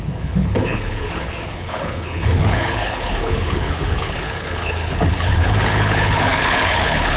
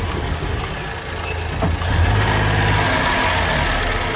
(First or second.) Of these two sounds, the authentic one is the second